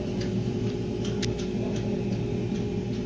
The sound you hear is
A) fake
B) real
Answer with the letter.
B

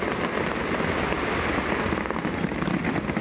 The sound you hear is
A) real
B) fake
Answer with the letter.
A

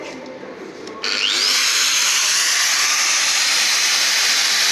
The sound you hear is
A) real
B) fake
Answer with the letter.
A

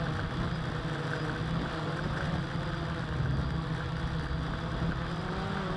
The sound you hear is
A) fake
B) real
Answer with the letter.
B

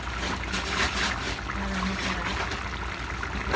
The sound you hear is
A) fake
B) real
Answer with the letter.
B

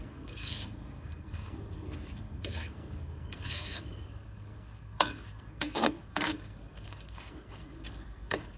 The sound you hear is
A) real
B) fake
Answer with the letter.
B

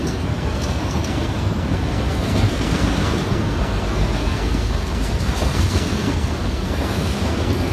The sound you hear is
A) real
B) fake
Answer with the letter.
B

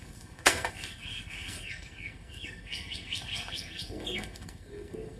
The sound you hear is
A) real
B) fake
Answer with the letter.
B